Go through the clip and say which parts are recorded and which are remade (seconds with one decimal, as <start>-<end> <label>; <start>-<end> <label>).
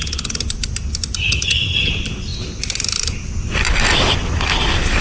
0.0-1.2 recorded; 1.2-1.9 remade; 1.9-5.0 recorded